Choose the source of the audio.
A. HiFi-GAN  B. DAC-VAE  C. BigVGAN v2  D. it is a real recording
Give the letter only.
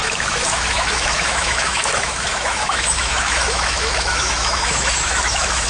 B